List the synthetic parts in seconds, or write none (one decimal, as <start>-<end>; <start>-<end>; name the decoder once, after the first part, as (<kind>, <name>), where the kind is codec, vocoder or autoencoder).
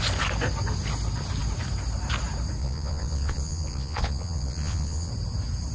2.6-5.1 (vocoder, Vocos)